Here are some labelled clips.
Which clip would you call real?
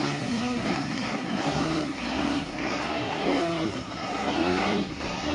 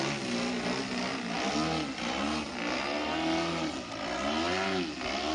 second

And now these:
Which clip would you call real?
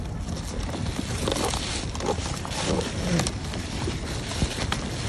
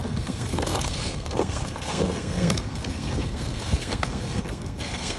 first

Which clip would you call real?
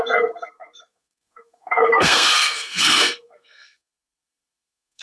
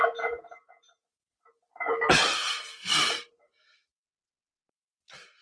second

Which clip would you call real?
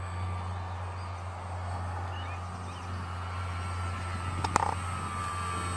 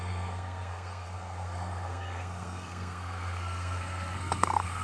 first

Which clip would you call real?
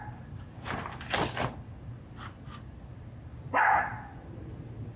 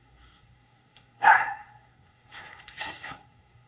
first